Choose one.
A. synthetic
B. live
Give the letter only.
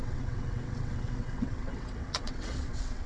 A